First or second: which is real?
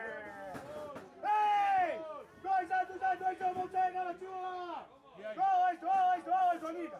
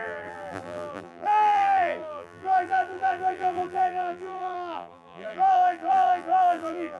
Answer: first